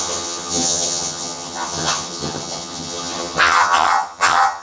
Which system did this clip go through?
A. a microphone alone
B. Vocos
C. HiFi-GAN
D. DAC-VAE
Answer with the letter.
C